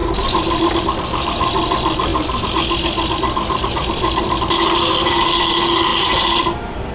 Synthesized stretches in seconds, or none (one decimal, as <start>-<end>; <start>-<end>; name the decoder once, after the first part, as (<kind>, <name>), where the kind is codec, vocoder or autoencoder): none